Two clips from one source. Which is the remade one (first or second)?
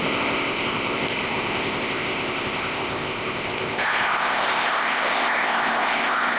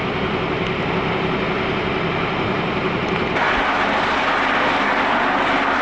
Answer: first